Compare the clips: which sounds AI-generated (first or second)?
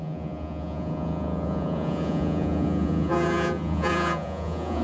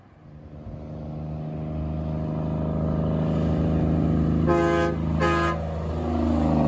first